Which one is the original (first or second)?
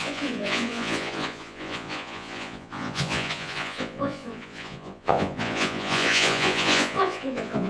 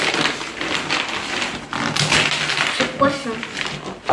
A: second